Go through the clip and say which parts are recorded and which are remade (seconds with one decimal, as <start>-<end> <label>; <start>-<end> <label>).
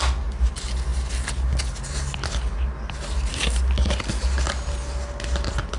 0.0-5.8 recorded